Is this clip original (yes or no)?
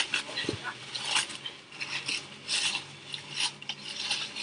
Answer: yes